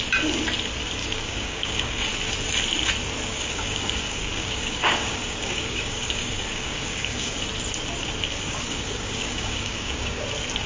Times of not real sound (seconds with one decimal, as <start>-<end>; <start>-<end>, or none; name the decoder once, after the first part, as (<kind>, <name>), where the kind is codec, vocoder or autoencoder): 1.0-2.1 (codec, DAC); 3.3-7.3; 8.3-10.2